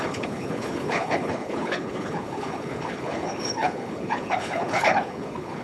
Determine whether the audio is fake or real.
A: fake